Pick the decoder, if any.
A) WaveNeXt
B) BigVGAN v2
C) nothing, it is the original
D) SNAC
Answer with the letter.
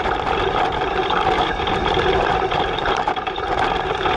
B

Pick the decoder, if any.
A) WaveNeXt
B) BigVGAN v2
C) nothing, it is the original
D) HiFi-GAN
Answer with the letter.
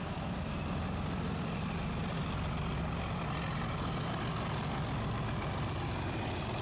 C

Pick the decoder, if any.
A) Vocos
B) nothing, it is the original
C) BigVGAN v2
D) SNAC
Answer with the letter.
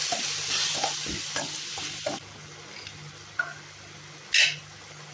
B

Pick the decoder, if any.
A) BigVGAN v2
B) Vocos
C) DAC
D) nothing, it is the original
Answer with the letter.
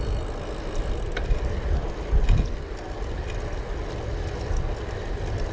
D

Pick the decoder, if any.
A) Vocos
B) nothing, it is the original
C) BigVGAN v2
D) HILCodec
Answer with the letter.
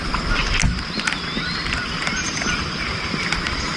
B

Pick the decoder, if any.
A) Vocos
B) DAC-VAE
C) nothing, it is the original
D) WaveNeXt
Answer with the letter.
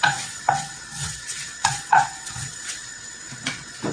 D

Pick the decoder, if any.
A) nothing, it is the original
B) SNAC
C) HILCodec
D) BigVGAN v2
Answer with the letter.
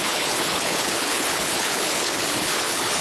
C